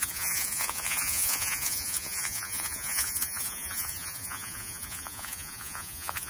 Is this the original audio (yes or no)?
no